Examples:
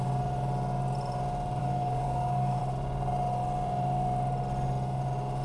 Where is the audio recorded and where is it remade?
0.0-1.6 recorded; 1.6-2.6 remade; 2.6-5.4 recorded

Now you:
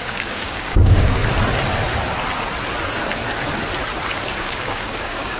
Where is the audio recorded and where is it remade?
0.0-1.2 remade; 1.2-4.4 recorded; 4.4-5.4 remade